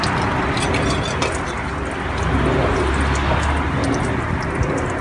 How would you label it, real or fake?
real